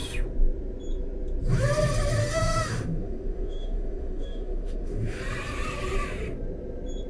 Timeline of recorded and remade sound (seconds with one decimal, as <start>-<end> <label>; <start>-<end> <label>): 0.0-2.2 recorded; 2.2-5.2 remade; 5.2-7.1 recorded